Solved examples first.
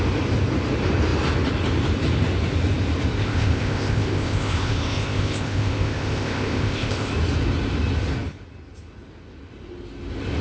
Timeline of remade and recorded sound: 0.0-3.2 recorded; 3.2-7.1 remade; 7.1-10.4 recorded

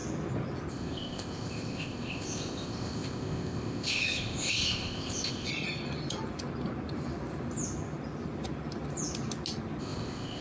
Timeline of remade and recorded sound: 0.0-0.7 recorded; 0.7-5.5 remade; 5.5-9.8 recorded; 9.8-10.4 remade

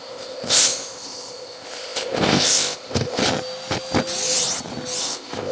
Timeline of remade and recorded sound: 0.0-3.2 remade; 3.2-5.0 recorded; 5.0-5.5 remade

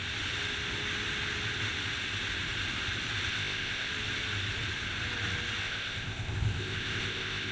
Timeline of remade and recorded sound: 0.0-3.3 recorded; 3.3-3.9 remade; 3.9-5.6 recorded; 5.6-7.5 remade

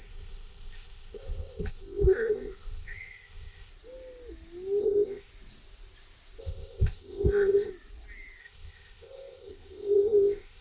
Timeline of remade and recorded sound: 0.0-3.7 remade; 3.7-4.8 recorded; 4.8-5.3 remade; 5.3-6.4 recorded; 6.4-7.7 remade; 7.7-8.4 recorded; 8.4-10.6 remade

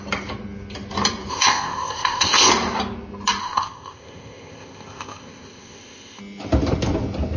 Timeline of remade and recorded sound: 0.0-1.3 recorded; 1.3-2.5 remade; 2.5-3.4 recorded; 3.4-6.2 remade; 6.2-7.4 recorded